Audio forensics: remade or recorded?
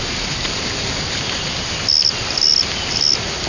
recorded